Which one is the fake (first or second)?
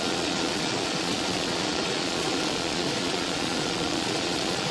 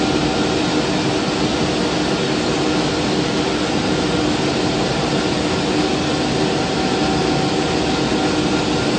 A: first